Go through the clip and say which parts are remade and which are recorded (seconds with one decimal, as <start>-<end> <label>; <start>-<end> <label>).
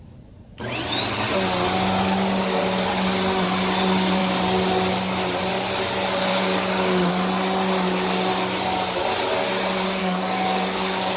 0.0-6.2 recorded; 6.2-7.1 remade; 7.1-10.0 recorded; 10.0-11.2 remade